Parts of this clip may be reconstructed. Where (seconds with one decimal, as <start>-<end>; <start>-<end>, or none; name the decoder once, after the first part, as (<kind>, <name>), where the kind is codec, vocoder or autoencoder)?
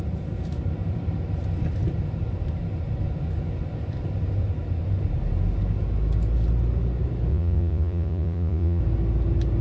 7.3-8.8 (vocoder, Vocos)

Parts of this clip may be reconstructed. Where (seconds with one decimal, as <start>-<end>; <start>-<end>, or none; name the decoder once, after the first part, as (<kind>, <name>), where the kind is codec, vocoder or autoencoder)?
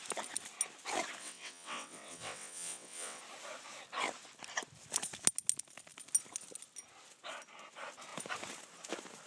1.2-3.2 (vocoder, WaveNeXt)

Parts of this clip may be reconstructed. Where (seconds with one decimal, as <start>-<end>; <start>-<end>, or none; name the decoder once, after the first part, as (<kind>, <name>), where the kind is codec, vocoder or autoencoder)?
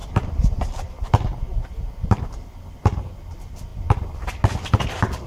0.0-1.1 (vocoder, BigVGAN v2)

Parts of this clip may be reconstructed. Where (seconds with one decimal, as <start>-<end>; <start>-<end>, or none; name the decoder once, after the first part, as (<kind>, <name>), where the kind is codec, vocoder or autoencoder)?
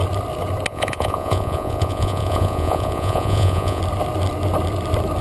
0.7-3.8 (vocoder, Vocos)